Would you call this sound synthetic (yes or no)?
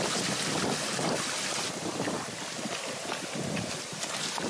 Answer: no